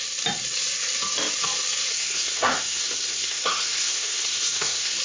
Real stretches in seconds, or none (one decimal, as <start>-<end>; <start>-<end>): 0.0-1.9